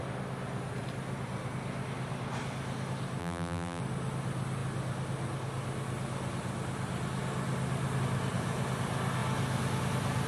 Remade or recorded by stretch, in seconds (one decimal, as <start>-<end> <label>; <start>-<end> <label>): 0.0-3.2 recorded; 3.2-3.8 remade; 3.8-10.3 recorded